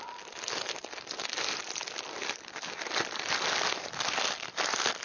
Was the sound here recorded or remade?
recorded